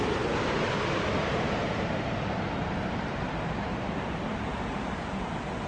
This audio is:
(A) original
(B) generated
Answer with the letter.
B